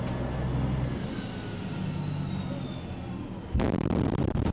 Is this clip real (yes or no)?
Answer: yes